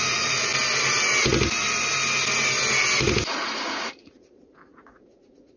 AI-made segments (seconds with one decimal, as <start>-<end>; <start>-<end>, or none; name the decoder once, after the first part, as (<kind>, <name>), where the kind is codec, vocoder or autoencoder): 0.0-0.5 (vocoder, Vocos); 3.4-5.6